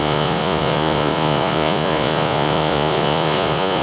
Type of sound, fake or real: fake